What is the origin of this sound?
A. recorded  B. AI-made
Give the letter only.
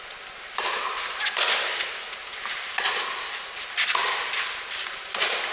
A